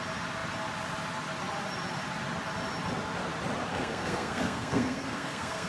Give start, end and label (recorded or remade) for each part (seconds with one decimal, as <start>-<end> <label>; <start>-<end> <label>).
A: 0.0-3.7 recorded; 3.7-5.7 remade